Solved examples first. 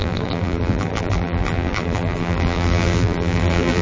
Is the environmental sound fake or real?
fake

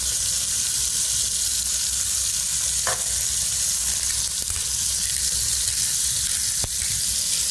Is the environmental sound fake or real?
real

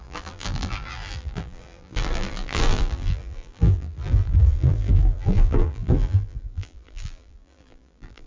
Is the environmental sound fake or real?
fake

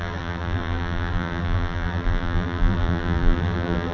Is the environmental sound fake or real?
fake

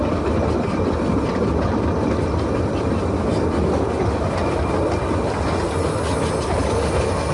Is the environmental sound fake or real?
real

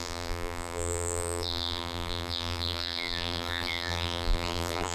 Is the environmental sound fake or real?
fake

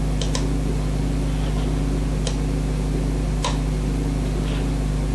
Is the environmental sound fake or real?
real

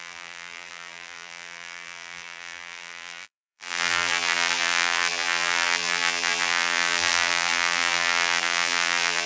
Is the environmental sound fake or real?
fake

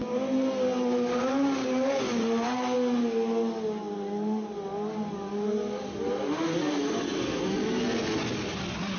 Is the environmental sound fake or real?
real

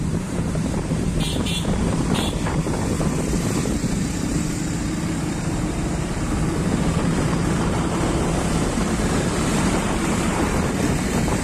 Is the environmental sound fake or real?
fake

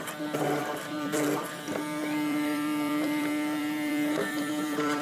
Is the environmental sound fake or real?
fake